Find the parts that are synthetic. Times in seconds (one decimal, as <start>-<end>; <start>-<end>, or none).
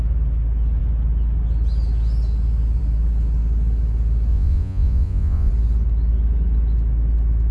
4.3-5.5